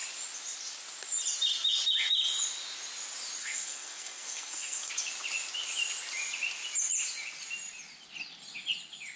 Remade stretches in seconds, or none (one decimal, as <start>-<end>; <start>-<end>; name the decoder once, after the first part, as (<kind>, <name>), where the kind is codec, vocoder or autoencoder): 3.4-4.9 (codec, SNAC)